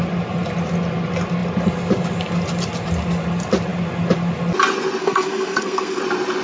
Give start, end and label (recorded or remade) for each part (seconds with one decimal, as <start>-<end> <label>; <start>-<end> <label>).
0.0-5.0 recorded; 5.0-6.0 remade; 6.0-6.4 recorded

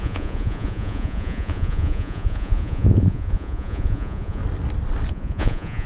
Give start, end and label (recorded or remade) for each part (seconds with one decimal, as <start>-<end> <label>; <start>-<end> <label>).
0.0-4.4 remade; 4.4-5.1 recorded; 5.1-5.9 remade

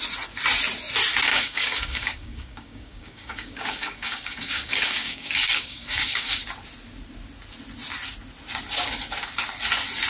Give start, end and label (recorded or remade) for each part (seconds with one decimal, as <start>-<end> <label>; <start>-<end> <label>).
0.0-1.3 recorded; 1.3-6.4 remade; 6.4-10.1 recorded

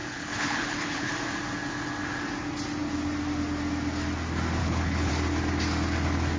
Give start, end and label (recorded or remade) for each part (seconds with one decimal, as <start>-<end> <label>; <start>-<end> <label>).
0.0-1.1 remade; 1.1-4.6 recorded; 4.6-5.1 remade; 5.1-6.4 recorded

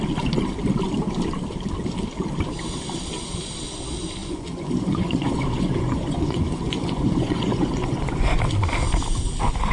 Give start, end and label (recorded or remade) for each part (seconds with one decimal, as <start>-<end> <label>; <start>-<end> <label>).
0.0-4.2 recorded; 4.2-8.4 remade; 8.4-9.7 recorded

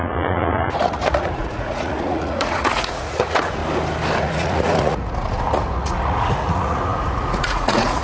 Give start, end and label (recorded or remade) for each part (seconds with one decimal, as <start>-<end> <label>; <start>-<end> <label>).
0.0-3.6 remade; 3.6-4.2 recorded; 4.2-8.0 remade

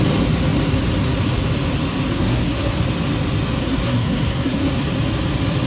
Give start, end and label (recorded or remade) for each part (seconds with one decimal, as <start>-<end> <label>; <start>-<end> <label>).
0.0-2.1 recorded; 2.1-2.8 remade; 2.8-3.6 recorded; 3.6-4.7 remade; 4.7-5.7 recorded